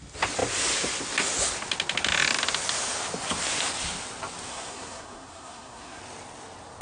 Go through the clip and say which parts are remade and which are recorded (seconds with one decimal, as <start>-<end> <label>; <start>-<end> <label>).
0.0-4.5 recorded; 4.5-6.0 remade; 6.0-6.8 recorded